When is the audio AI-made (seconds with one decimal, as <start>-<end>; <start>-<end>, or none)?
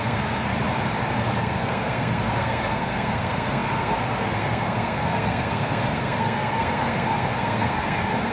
0.0-0.5; 1.4-8.3